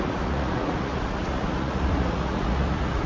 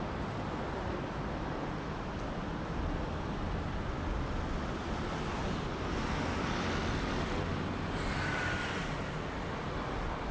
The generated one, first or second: first